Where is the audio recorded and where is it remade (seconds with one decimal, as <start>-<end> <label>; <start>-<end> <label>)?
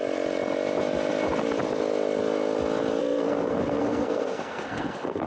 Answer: 0.0-3.0 recorded; 3.0-5.3 remade